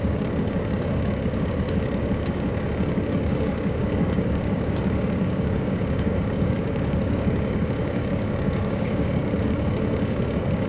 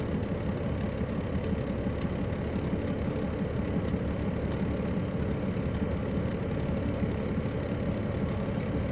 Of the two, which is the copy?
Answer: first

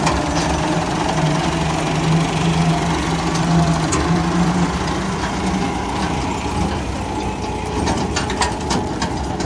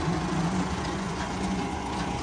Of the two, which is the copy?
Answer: second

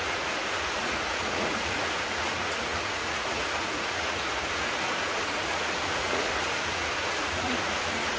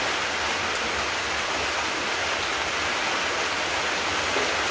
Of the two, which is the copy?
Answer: first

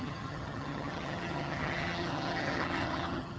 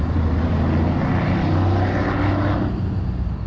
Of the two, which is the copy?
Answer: first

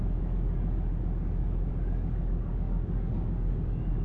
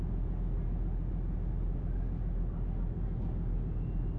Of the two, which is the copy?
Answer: first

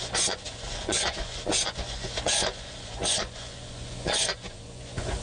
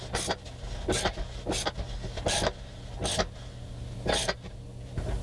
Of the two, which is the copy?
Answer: first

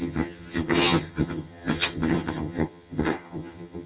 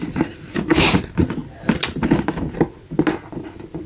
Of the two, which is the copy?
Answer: first